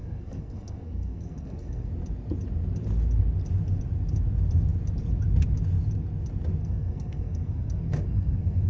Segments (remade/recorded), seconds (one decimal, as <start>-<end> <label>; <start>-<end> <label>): 0.0-1.9 remade; 1.9-6.6 recorded; 6.6-8.7 remade